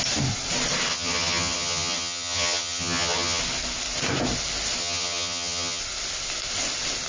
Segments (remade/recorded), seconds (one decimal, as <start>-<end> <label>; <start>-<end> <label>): 0.0-0.9 recorded; 0.9-3.4 remade; 3.4-4.8 recorded; 4.8-5.8 remade; 5.8-7.1 recorded